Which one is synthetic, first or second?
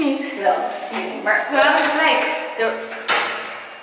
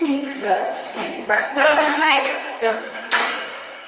second